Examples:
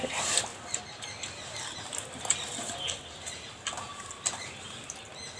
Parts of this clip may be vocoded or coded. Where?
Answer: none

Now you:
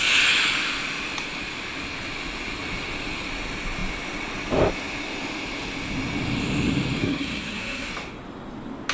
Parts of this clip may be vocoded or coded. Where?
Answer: 7.0-7.9 (codec, SNAC)

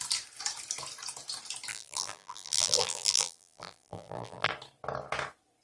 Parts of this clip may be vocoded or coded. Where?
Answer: 1.7-4.5 (vocoder, BigVGAN v2)

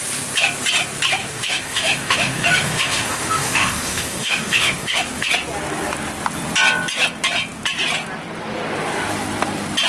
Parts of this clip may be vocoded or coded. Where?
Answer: 1.2-5.3 (autoencoder, DAC-VAE)

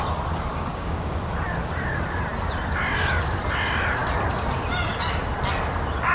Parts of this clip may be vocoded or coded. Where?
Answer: 0.5-1.2 (codec, DAC)

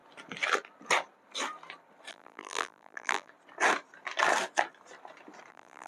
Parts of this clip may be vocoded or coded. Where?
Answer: 2.1-3.3 (vocoder, BigVGAN v2); 5.5-5.9

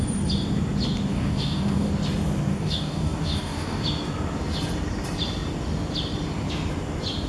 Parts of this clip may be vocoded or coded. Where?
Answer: 1.1-1.9 (codec, DAC); 2.5-3.8